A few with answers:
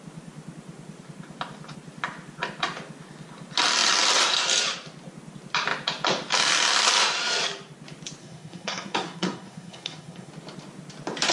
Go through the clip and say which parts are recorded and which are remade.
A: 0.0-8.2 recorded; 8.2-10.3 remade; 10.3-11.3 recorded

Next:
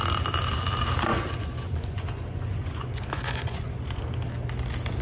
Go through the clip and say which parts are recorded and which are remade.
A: 0.0-1.1 recorded; 1.1-4.0 remade; 4.0-5.0 recorded

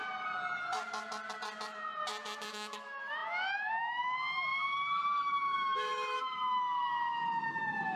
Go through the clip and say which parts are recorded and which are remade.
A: 0.0-2.5 recorded; 2.5-8.0 remade

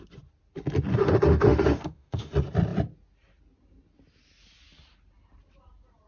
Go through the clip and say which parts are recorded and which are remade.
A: 0.0-1.0 recorded; 1.0-2.3 remade; 2.3-6.1 recorded

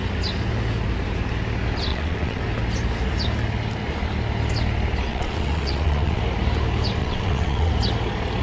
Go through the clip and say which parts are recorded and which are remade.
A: 0.0-1.9 recorded; 1.9-2.4 remade; 2.4-5.1 recorded; 5.1-6.2 remade; 6.2-7.0 recorded; 7.0-7.7 remade; 7.7-8.4 recorded

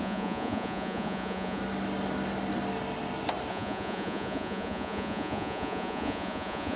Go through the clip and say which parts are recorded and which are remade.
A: 0.0-1.6 remade; 1.6-3.5 recorded; 3.5-6.8 remade